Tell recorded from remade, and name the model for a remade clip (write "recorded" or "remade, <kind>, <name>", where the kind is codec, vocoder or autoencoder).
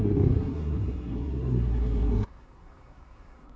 remade, codec, SNAC